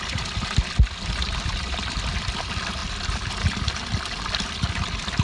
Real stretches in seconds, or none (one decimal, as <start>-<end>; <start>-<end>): 0.0-5.2